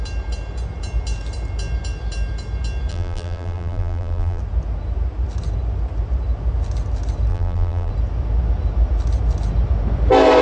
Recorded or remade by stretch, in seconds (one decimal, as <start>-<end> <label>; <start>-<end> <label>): 0.0-2.9 recorded; 2.9-4.4 remade; 4.4-7.3 recorded; 7.3-7.9 remade; 7.9-10.4 recorded